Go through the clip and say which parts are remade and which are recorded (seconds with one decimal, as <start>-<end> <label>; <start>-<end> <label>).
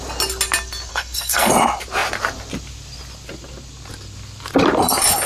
0.0-0.9 recorded; 0.9-1.5 remade; 1.5-5.3 recorded